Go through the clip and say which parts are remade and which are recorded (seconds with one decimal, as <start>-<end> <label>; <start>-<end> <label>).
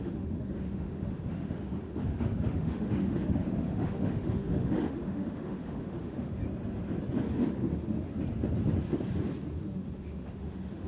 0.0-6.4 remade; 6.4-7.5 recorded; 7.5-8.1 remade; 8.1-9.5 recorded; 9.5-10.9 remade